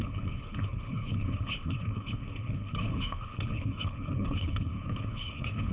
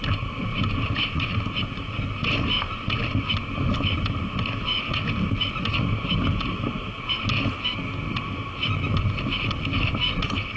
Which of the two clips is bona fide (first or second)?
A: second